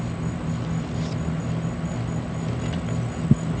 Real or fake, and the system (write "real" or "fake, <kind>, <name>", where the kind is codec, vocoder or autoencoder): real